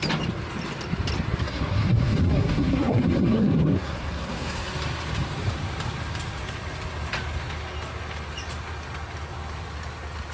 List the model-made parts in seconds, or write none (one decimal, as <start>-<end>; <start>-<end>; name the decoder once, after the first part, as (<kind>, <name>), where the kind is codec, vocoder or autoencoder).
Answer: 1.4-4.7 (codec, SNAC)